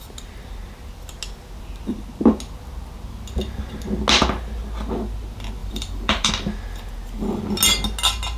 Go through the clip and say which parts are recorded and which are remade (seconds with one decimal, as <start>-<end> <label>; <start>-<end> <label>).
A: 0.0-5.6 recorded; 5.6-6.3 remade; 6.3-8.4 recorded